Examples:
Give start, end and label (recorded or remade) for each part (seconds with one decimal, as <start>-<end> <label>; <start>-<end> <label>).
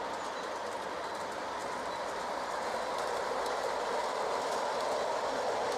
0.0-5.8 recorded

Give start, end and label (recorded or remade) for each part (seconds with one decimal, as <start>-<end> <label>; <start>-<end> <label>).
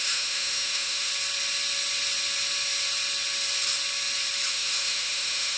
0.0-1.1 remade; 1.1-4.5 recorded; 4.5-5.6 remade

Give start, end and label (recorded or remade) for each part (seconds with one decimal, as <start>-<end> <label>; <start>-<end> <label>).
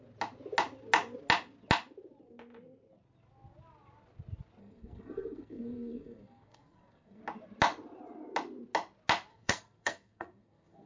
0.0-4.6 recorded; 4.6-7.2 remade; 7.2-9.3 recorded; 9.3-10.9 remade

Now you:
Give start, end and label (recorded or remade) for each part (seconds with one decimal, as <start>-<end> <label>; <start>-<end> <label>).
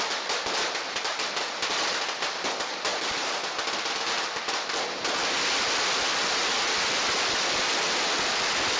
0.0-2.9 recorded; 2.9-3.5 remade; 3.5-8.8 recorded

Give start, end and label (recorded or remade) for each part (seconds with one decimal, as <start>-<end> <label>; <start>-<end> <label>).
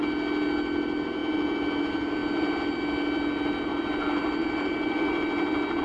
0.0-5.8 recorded